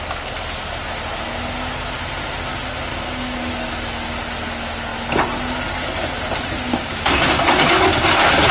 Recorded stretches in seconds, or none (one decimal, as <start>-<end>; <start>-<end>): 0.0-2.9; 3.5-6.7; 7.3-8.5